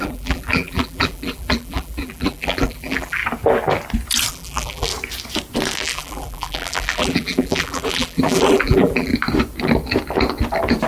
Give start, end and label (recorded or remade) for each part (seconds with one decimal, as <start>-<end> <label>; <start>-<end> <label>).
0.0-3.2 remade; 3.2-4.3 recorded; 4.3-4.9 remade; 4.9-5.8 recorded; 5.8-9.1 remade; 9.1-10.9 recorded